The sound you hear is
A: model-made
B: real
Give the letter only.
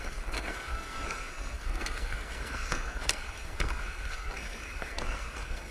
A